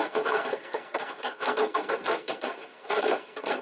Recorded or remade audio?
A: remade